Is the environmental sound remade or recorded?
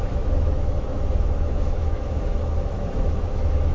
remade